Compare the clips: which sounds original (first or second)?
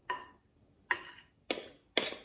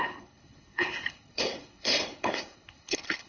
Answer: first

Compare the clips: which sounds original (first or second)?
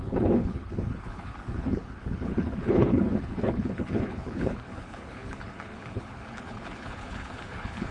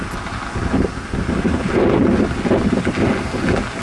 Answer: second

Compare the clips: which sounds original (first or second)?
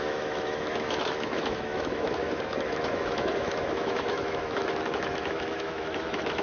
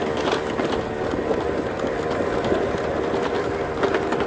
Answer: second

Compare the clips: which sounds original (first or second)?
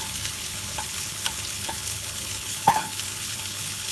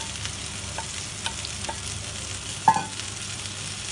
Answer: second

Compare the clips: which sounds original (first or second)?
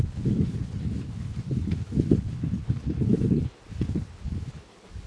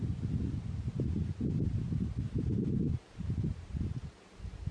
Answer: second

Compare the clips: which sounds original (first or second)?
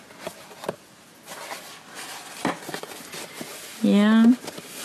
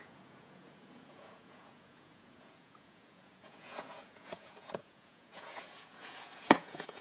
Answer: first